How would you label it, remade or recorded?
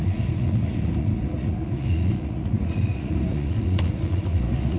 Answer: remade